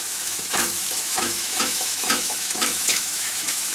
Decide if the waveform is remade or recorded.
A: remade